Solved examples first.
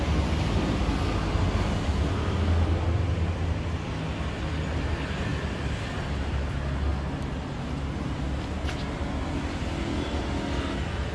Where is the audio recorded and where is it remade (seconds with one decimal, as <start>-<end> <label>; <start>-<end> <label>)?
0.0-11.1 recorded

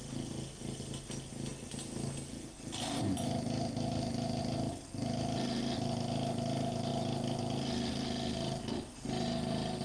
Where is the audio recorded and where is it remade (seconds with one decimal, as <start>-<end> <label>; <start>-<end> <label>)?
0.0-9.8 recorded

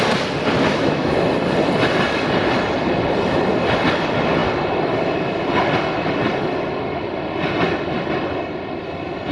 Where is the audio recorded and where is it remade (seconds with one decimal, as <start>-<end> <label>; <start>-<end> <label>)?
0.0-0.7 recorded; 0.7-1.2 remade; 1.2-9.3 recorded

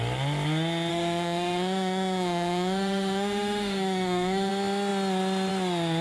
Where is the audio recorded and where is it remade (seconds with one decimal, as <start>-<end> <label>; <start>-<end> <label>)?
0.0-0.9 recorded; 0.9-4.5 remade; 4.5-6.0 recorded